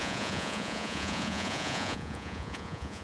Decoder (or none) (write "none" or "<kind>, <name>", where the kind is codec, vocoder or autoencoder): vocoder, Vocos